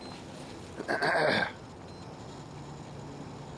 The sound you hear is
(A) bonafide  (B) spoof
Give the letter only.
A